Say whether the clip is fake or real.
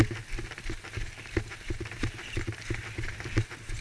real